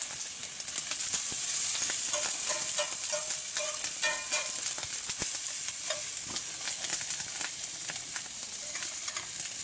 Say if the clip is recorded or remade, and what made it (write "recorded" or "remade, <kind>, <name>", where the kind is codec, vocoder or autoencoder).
recorded